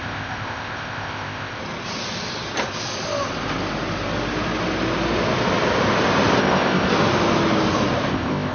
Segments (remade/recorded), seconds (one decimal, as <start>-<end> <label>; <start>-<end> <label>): 0.0-1.6 remade; 1.6-6.4 recorded; 6.4-6.9 remade; 6.9-8.1 recorded; 8.1-8.5 remade